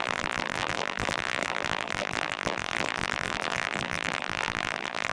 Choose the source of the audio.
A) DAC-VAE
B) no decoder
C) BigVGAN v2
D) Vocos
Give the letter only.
C